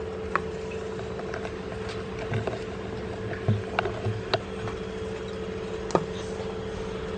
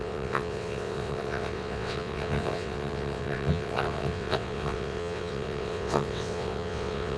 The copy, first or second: second